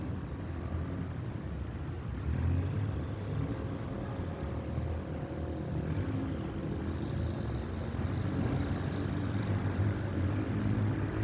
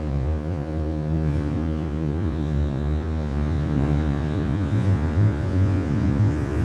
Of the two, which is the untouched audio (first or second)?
first